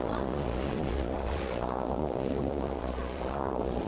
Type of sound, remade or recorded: remade